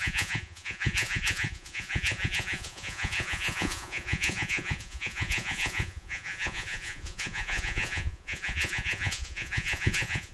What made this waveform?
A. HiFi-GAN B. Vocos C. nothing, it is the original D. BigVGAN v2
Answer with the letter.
B